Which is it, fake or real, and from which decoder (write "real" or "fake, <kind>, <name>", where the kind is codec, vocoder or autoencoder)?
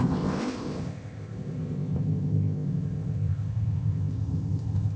fake, codec, ZipCodec